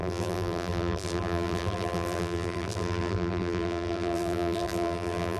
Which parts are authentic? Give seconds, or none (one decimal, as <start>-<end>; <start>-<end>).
none